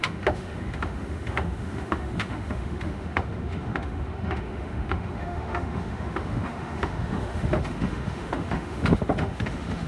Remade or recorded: remade